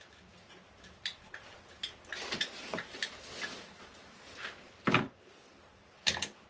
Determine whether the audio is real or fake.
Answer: real